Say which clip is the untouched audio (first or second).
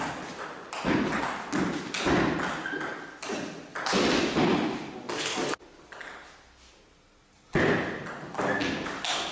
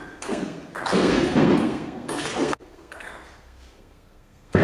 first